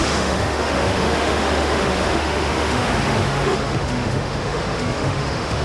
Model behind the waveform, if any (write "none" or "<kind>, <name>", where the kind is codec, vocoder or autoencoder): autoencoder, DAC-VAE